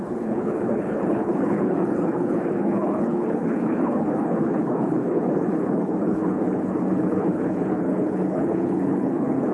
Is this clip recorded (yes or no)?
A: no